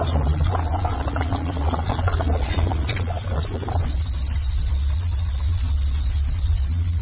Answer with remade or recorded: remade